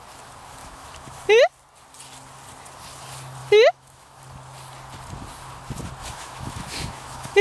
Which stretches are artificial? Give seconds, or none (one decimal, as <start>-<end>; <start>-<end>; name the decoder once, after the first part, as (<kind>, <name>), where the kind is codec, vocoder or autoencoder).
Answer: 0.6-1.2 (autoencoder, DAC-VAE); 3.4-4.2; 6.0-7.4